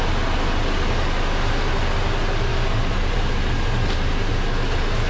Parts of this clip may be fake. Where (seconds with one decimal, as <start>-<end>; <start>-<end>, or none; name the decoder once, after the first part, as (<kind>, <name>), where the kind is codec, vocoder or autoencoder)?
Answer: 2.5-3.2 (vocoder, BigVGAN v2)